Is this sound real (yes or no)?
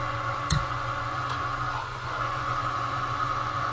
no